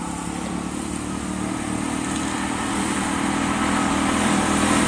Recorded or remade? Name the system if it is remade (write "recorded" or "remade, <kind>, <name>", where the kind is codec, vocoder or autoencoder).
recorded